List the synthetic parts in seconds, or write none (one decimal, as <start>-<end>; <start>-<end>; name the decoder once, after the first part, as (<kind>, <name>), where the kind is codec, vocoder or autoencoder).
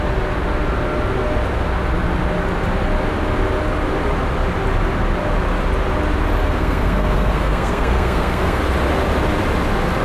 6.4-8.6 (codec, SNAC)